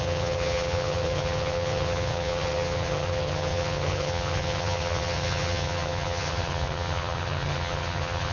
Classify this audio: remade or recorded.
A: remade